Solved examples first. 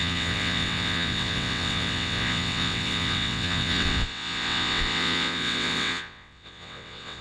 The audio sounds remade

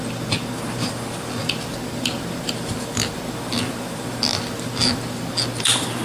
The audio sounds remade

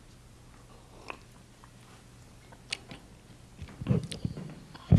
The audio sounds recorded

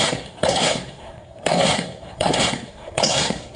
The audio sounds remade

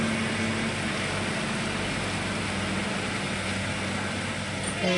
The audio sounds recorded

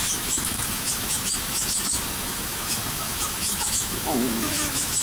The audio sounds remade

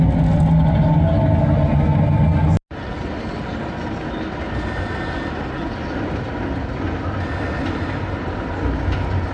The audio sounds recorded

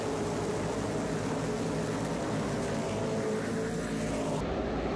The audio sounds recorded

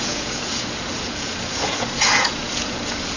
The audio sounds remade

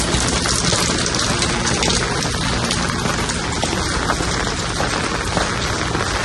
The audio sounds recorded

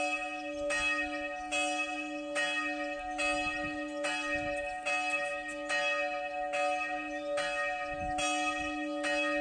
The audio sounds recorded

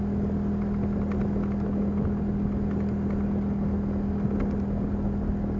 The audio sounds recorded